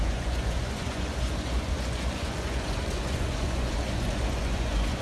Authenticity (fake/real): fake